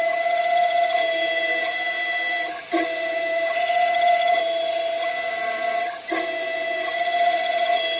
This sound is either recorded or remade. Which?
remade